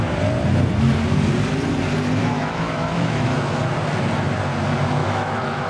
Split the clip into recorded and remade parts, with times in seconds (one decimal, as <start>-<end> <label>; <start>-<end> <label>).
0.0-2.2 recorded; 2.2-3.6 remade; 3.6-5.0 recorded; 5.0-5.7 remade